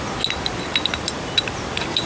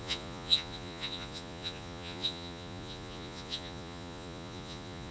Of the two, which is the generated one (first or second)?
second